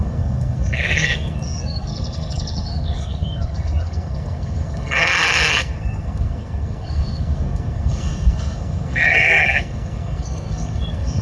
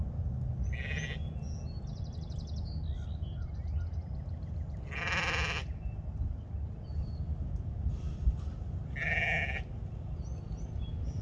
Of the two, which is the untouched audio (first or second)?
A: second